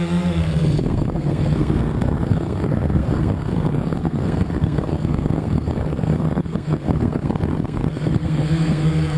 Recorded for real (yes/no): no